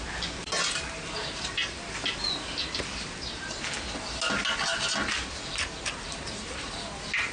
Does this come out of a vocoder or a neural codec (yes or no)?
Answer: no